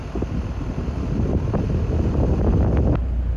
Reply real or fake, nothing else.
real